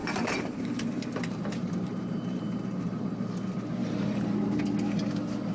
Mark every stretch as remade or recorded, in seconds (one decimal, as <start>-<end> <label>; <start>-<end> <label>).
0.0-3.3 remade; 3.3-3.8 recorded; 3.8-4.6 remade; 4.6-5.5 recorded